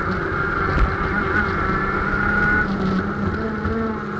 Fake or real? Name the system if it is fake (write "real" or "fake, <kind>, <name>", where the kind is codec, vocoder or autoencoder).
real